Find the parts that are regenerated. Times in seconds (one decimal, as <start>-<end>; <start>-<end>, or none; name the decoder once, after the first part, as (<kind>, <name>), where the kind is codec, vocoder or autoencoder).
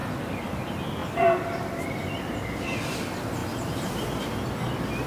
0.0-0.5 (vocoder, BigVGAN v2); 1.0-1.6; 3.4-4.6